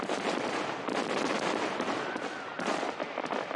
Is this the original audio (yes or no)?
yes